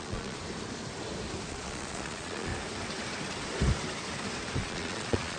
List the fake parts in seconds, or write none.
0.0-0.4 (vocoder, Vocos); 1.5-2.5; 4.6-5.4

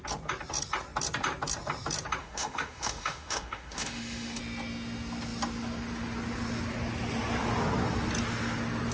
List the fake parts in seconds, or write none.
2.2-4.4 (autoencoder, DAC-VAE)

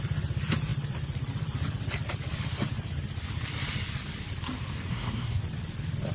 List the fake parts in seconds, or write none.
4.9-5.4 (codec, SNAC)

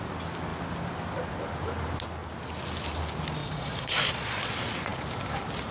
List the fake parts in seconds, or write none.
3.4-4.5 (vocoder, Vocos)

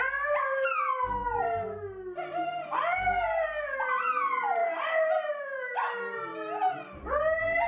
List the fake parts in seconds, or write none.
none